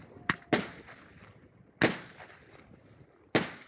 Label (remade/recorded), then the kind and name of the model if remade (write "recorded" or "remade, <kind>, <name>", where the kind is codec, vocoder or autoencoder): recorded